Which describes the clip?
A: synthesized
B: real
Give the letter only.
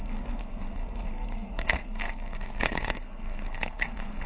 A